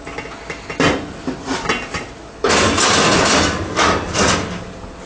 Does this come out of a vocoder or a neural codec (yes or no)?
no